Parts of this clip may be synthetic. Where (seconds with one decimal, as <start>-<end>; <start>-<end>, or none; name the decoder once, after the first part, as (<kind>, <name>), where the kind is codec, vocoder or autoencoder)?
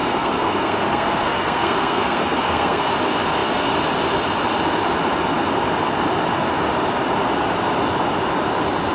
0.0-2.9 (codec, SNAC)